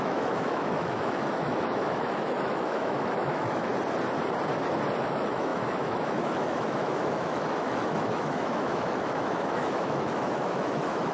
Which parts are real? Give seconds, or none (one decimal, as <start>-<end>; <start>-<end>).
3.7-5.0